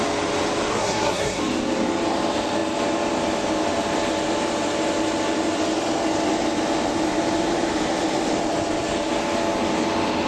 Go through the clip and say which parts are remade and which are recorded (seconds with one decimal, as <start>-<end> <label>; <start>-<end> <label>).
0.0-0.7 recorded; 0.7-1.4 remade; 1.4-10.3 recorded